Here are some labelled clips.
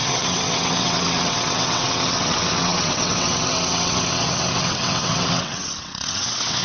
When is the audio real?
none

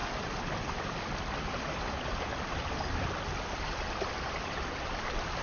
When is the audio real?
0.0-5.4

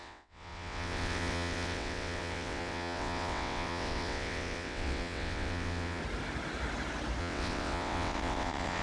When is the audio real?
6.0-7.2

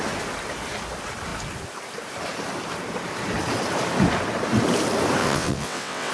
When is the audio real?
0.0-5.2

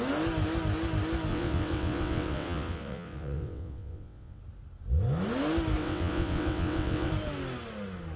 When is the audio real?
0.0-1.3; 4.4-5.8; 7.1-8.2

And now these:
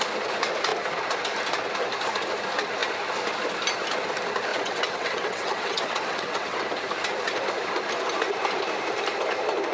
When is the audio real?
0.0-4.5; 6.6-9.7

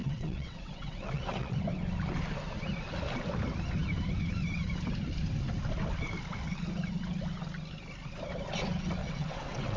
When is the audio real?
1.6-9.0